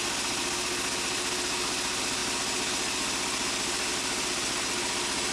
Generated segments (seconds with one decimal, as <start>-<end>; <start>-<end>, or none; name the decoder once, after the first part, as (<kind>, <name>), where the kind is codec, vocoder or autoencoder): none